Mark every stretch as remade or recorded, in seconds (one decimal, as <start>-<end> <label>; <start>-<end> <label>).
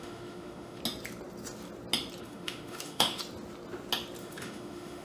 0.0-0.8 remade; 0.8-2.2 recorded; 2.2-3.2 remade; 3.2-4.2 recorded; 4.2-5.0 remade